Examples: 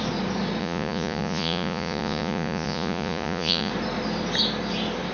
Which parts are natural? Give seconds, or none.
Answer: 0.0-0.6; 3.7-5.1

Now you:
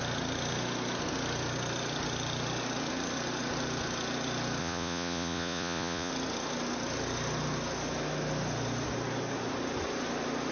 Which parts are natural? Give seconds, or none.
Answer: 0.0-4.6; 6.1-10.5

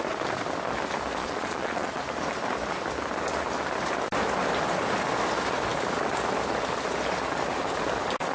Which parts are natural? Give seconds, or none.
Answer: 0.0-1.2; 2.0-8.3